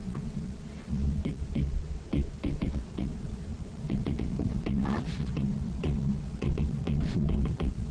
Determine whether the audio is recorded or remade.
remade